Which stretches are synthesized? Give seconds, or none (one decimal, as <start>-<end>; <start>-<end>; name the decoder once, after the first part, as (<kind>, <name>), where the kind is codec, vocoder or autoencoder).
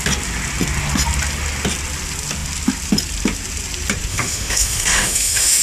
4.1-5.6 (autoencoder, DAC-VAE)